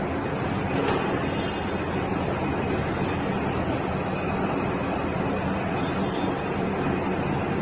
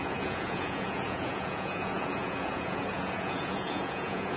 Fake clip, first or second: second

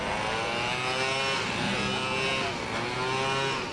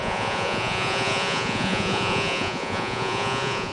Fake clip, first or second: second